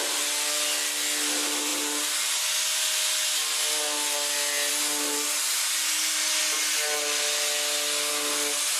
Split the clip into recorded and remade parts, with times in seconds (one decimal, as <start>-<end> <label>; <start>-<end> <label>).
0.0-8.8 recorded